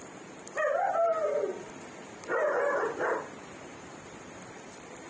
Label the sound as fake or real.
fake